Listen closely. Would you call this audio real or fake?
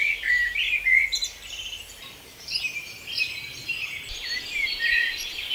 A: fake